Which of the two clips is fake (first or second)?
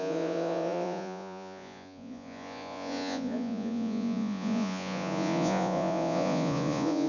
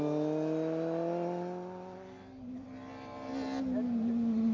first